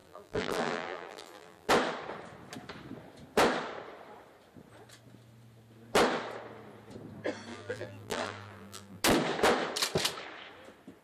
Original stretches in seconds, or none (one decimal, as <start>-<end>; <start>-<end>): 1.7-7.5; 9.0-11.0